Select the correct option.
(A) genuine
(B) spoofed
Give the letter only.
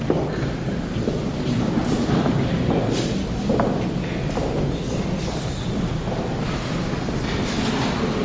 A